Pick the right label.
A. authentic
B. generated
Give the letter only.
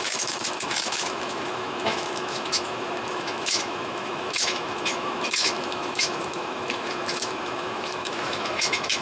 B